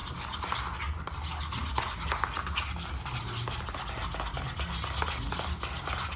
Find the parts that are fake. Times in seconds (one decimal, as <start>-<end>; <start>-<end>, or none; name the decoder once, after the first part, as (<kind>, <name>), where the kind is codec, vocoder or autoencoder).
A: none